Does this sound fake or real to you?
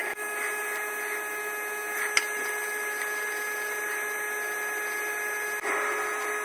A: real